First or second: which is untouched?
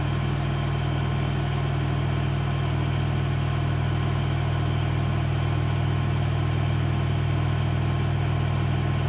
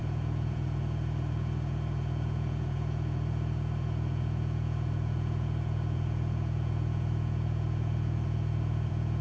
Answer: first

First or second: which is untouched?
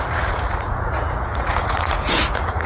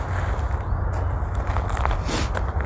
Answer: second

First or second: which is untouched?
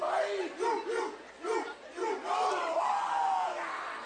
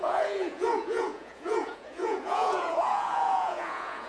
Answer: first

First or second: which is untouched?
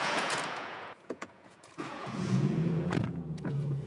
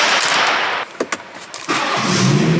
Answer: second